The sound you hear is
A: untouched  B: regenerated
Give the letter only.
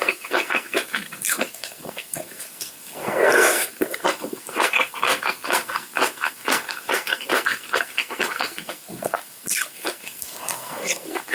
B